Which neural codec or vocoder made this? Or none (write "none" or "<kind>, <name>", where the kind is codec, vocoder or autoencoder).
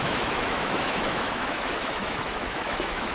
autoencoder, DAC-VAE